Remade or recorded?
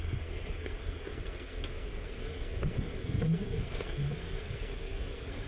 remade